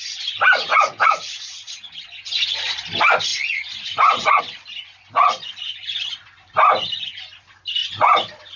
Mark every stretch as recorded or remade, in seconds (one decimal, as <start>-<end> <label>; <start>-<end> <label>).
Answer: 0.0-0.7 recorded; 0.7-1.7 remade; 1.7-3.3 recorded; 3.3-4.4 remade; 4.4-8.6 recorded